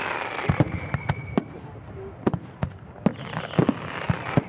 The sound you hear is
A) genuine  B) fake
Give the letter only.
A